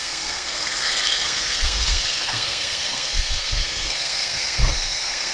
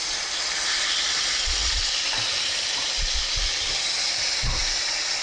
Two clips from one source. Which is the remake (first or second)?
first